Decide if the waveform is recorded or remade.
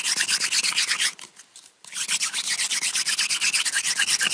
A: recorded